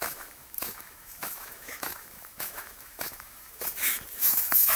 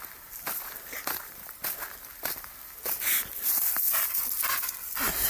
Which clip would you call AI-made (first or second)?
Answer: first